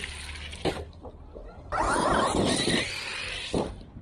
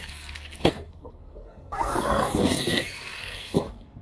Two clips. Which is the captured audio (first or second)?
first